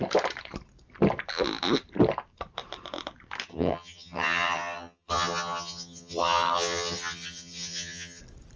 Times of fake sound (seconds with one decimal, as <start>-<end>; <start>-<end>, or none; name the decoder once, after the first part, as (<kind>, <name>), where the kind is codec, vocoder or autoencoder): 3.5-8.2 (vocoder, HiFi-GAN)